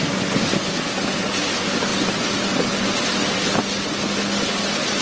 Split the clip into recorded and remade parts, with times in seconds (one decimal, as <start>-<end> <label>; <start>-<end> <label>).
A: 0.0-5.0 recorded